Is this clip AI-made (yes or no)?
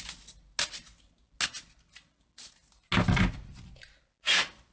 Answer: no